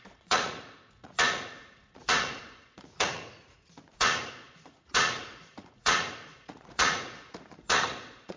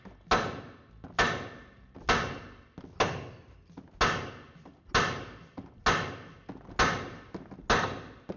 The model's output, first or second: first